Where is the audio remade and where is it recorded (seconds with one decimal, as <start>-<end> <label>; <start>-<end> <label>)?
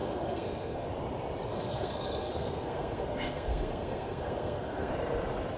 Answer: 0.0-0.9 remade; 0.9-1.5 recorded; 1.5-4.9 remade; 4.9-5.6 recorded